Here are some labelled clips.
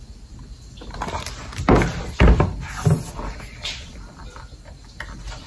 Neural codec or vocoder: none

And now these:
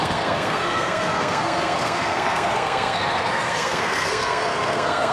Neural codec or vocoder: codec, SNAC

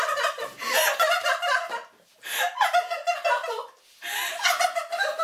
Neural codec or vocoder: none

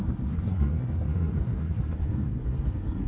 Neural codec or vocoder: codec, SNAC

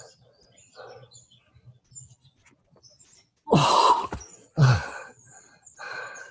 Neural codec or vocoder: none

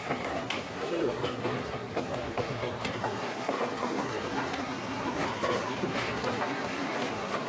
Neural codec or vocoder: codec, SNAC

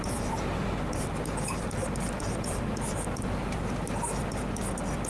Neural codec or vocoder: none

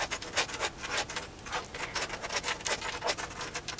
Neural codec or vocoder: none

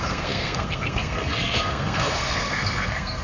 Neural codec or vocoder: codec, SNAC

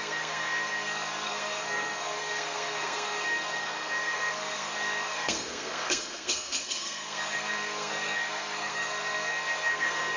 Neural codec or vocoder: codec, SNAC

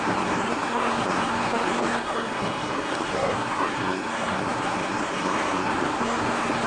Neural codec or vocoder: codec, SNAC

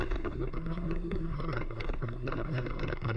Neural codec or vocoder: codec, SNAC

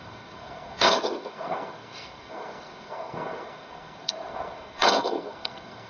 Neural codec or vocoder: codec, SNAC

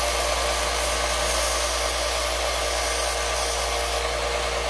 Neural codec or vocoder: none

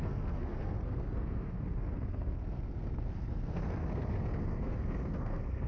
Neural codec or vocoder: codec, SNAC